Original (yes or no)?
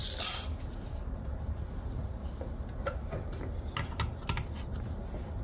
yes